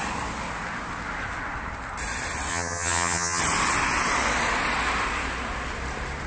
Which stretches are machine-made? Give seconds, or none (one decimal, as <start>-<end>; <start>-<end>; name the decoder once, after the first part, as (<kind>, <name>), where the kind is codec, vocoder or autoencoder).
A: 2.5-3.4 (vocoder, HiFi-GAN)